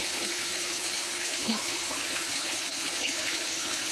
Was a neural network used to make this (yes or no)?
yes